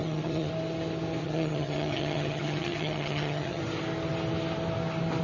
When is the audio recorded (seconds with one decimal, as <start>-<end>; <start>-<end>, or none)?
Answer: 0.5-1.2; 3.6-5.2